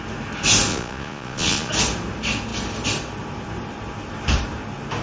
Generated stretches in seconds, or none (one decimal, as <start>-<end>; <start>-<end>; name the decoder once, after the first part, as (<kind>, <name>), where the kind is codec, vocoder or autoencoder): 0.7-1.7 (vocoder, Vocos)